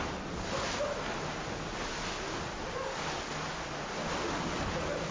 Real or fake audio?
real